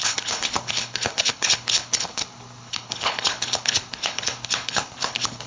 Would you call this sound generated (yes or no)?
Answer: yes